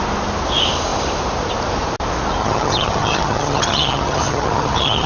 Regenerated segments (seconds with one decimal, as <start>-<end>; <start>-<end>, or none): 2.4-5.1